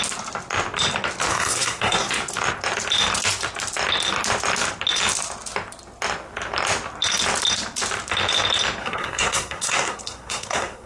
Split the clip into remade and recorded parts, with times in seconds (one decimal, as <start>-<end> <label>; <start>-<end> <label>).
0.0-1.3 recorded; 1.3-2.1 remade; 2.1-8.8 recorded; 8.8-10.9 remade